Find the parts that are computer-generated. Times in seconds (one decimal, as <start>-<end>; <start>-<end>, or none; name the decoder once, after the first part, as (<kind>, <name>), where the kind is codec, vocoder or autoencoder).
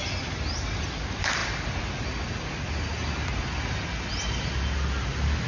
none